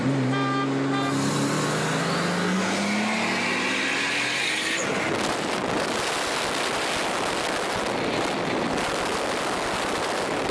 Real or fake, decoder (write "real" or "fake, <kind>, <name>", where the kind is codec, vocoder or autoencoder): real